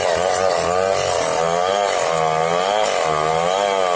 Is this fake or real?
real